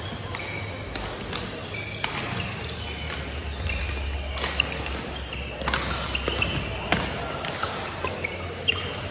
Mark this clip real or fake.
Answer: real